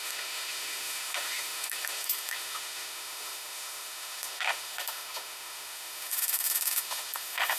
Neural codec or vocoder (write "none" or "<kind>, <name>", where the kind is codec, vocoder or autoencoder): autoencoder, DAC-VAE